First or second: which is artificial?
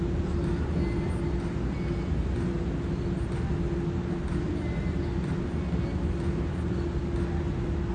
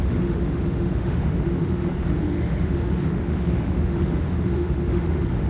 second